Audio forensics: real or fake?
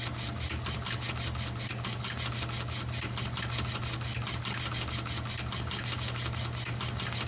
real